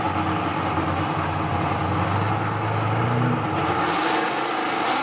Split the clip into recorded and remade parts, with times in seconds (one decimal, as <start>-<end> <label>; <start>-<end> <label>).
0.0-5.0 recorded